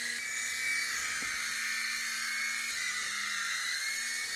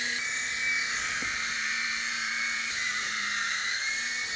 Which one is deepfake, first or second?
second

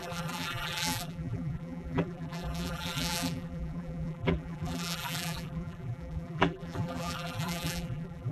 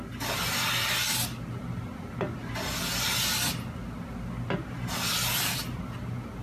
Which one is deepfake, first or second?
first